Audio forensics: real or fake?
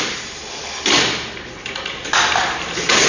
real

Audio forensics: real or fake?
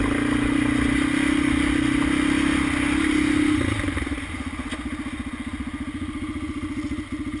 real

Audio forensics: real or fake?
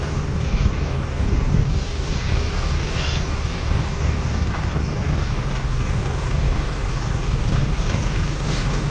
fake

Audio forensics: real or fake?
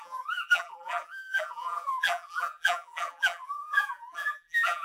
fake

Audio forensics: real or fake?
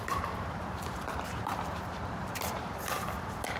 fake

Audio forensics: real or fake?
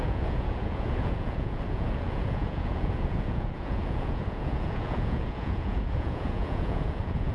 fake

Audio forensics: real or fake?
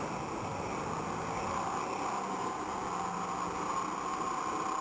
real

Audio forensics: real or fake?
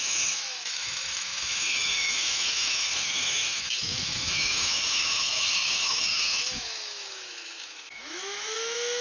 fake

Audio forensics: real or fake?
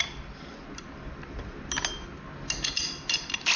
real